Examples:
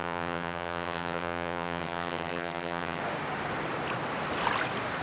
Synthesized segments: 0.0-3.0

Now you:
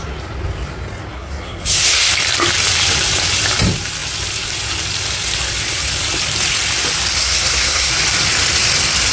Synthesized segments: 1.1-2.1; 7.2-7.9

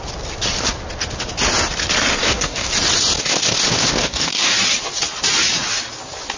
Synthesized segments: 2.2-2.7; 4.0-4.5

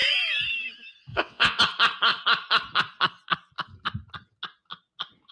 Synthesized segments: 1.1-1.6

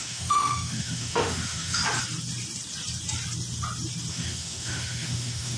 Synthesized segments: 0.0-1.8; 4.1-5.6

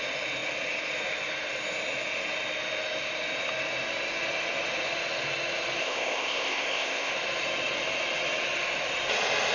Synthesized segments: 5.8-7.1

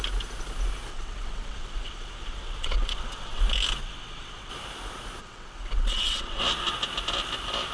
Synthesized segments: 0.9-3.4; 3.8-4.5; 5.2-6.4